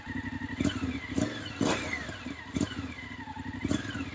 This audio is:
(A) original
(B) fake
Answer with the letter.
A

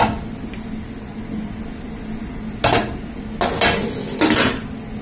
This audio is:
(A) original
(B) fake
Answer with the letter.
A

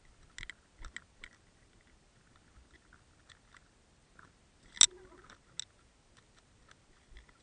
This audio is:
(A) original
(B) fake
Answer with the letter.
A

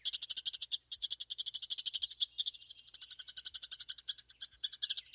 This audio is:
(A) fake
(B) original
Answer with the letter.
B